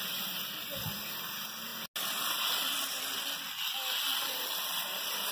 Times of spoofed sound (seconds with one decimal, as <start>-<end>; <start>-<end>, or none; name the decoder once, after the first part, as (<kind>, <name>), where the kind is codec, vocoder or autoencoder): none

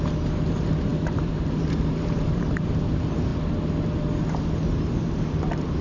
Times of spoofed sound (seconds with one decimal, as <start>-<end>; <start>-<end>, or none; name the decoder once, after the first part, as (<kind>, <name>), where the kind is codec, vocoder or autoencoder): 0.0-3.3 (vocoder, BigVGAN v2); 4.7-5.8

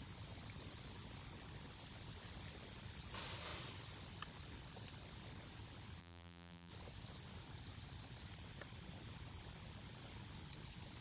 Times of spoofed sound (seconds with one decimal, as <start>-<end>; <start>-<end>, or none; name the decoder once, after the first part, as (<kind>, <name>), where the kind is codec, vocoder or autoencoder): 6.0-6.7 (vocoder, BigVGAN v2)